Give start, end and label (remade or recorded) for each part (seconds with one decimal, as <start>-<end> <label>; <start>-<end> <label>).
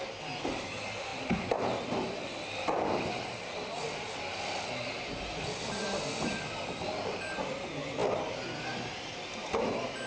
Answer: 0.0-10.1 recorded